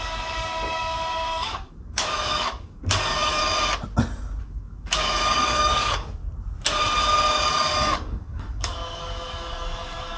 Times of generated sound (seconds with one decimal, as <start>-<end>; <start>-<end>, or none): 0.0-3.4; 4.4-6.2; 7.5-10.2